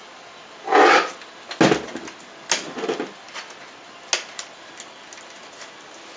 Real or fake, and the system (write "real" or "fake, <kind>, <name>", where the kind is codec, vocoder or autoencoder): real